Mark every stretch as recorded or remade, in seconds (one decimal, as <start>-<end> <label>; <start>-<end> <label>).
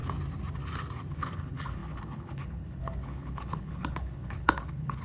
0.0-1.1 recorded; 1.1-5.0 remade